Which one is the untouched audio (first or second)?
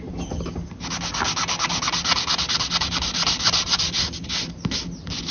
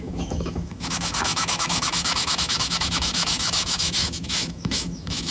first